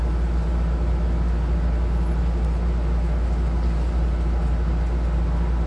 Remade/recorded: recorded